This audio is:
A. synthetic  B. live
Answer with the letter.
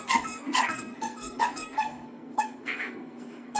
A